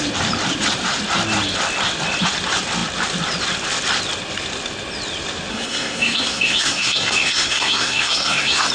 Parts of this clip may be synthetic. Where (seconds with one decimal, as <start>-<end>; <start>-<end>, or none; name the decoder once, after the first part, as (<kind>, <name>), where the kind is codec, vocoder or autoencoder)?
5.5-8.7 (codec, SNAC)